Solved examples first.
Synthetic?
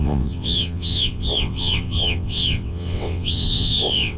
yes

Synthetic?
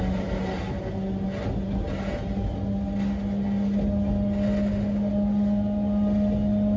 no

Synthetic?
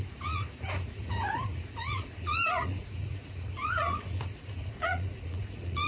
yes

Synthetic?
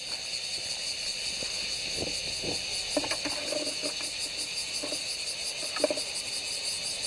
no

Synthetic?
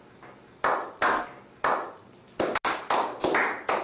no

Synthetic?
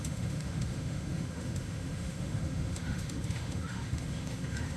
yes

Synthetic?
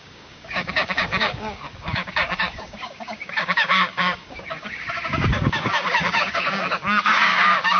yes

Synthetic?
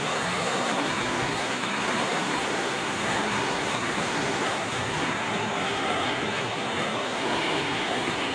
yes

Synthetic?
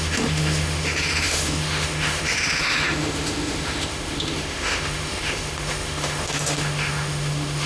yes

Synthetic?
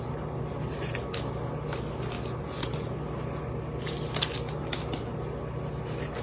no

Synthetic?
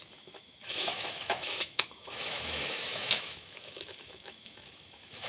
yes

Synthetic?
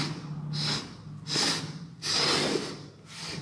no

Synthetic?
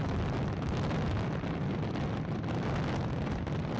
no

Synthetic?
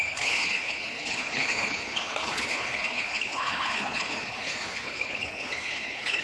yes